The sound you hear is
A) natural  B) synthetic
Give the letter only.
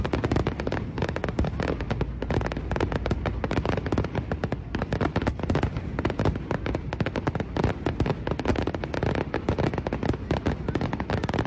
A